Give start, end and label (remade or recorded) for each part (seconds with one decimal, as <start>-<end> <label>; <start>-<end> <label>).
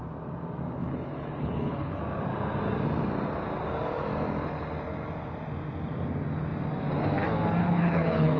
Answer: 0.0-0.8 recorded; 0.8-2.0 remade; 2.0-7.6 recorded; 7.6-8.4 remade